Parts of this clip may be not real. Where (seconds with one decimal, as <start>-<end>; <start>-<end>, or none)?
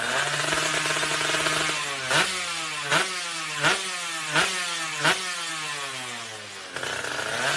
none